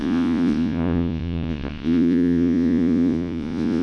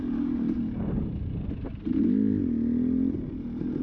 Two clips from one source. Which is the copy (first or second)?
first